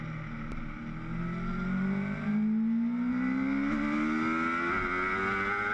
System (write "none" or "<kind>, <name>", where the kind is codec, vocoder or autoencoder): none